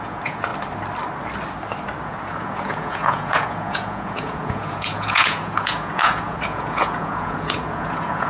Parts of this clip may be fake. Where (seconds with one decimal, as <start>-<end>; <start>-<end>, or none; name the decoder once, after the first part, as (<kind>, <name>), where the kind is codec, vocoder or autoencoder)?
0.0-0.5 (vocoder, Vocos); 2.0-8.3